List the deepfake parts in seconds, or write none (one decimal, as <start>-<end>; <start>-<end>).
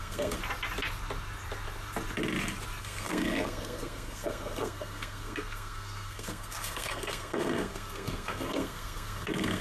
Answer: 0.0-0.4; 2.8-9.6